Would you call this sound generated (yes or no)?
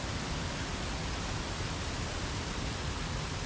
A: no